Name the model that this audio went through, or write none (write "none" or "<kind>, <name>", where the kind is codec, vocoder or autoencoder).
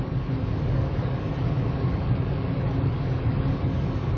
codec, DAC